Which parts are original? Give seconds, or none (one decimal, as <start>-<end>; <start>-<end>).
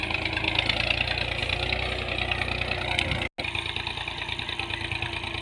0.0-5.4